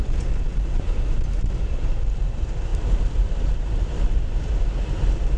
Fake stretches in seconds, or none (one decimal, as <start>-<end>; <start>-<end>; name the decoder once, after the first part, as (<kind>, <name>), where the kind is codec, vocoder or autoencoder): 0.5-1.0 (vocoder, BigVGAN v2)